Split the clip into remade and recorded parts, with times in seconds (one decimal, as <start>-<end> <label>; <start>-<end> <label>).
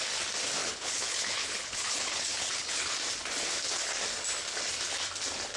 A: 0.0-0.6 recorded; 0.6-2.9 remade; 2.9-5.6 recorded